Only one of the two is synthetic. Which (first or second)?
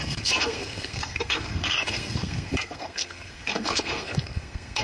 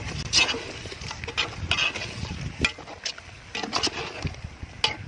first